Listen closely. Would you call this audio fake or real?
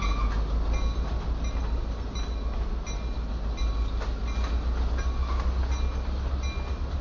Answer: real